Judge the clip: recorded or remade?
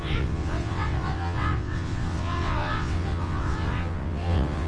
remade